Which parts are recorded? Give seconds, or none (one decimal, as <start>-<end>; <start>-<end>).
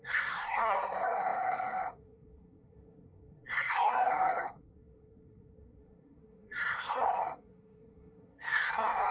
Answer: none